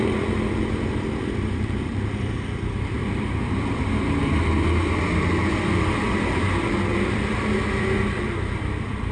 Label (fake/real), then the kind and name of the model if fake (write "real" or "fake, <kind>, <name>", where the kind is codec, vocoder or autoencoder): fake, vocoder, BigVGAN v2